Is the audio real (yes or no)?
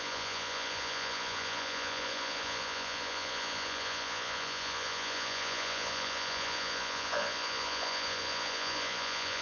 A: no